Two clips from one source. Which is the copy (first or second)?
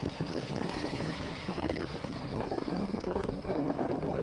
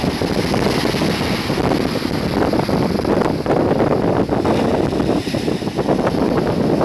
first